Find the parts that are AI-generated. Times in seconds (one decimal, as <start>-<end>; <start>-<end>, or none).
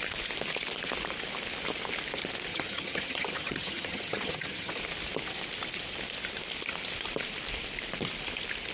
2.5-4.8